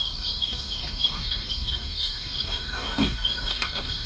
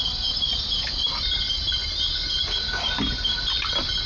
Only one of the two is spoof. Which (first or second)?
first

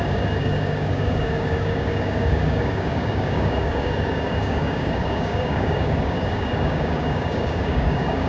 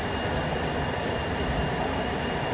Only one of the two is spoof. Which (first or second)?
first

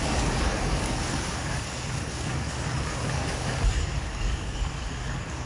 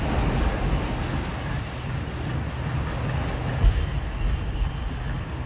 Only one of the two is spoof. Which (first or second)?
first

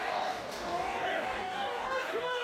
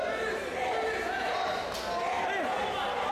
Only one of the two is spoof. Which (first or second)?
first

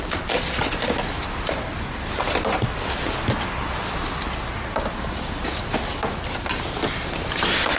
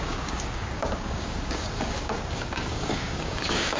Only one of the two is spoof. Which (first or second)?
second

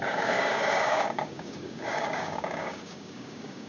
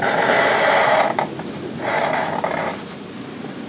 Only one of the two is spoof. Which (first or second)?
first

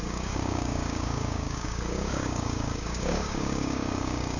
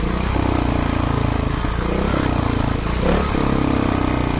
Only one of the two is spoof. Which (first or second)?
first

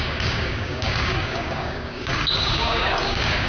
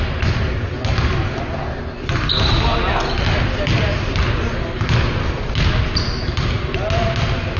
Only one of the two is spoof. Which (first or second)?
first